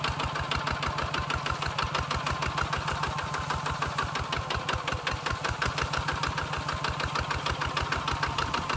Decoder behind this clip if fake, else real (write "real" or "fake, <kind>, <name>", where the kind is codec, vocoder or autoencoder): real